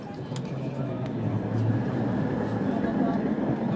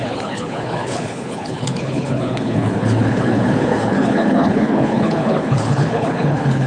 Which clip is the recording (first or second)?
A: first